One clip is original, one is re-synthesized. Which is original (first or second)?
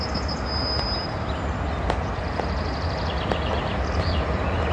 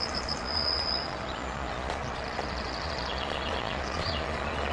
first